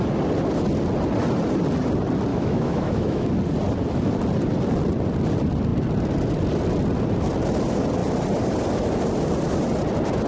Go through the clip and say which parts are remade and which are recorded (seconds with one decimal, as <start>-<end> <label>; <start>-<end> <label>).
0.0-2.3 recorded; 2.3-3.3 remade; 3.3-10.3 recorded